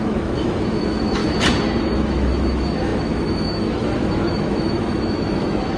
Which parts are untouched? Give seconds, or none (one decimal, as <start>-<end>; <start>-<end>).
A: 1.2-1.8